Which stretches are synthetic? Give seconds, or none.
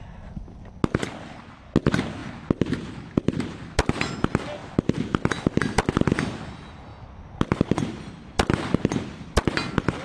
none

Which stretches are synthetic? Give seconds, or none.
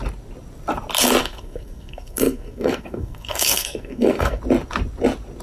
1.2-4.4 (codec, SNAC)